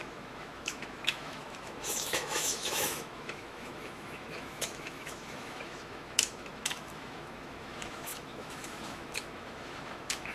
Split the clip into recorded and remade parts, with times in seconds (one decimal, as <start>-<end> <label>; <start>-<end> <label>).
0.0-10.3 remade